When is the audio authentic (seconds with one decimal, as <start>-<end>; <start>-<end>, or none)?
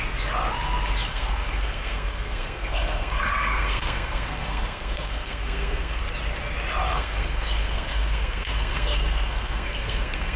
0.0-1.1; 6.0-6.9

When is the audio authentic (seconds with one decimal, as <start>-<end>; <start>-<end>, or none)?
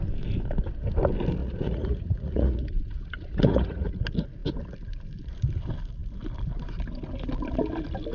0.0-1.4; 4.0-8.1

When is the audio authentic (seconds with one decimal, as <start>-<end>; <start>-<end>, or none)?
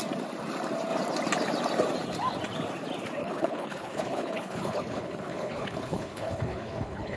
0.0-3.2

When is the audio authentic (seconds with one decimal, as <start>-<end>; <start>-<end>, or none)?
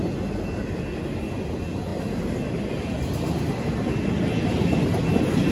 0.0-5.5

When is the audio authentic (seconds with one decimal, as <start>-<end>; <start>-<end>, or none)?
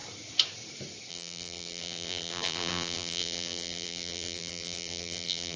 0.0-1.1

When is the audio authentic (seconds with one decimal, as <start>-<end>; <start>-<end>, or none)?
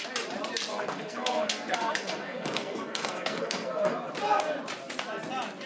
0.0-0.7; 4.1-5.7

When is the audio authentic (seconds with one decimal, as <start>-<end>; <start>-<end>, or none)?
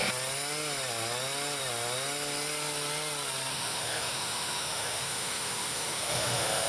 0.0-3.5